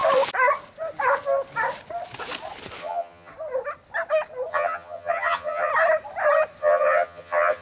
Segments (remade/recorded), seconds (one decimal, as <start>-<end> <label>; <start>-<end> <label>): 0.0-2.8 recorded; 2.8-3.3 remade; 3.3-4.5 recorded; 4.5-5.7 remade; 5.7-6.6 recorded; 6.6-7.6 remade